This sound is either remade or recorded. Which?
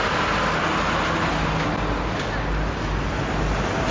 recorded